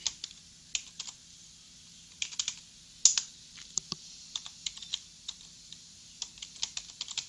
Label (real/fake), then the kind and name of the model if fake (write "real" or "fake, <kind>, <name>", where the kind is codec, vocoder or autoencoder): real